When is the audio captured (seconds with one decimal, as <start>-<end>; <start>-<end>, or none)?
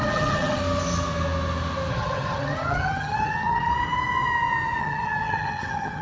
0.6-1.9; 3.7-4.8